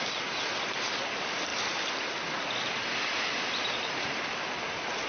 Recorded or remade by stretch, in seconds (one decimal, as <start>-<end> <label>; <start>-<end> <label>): 0.0-5.1 recorded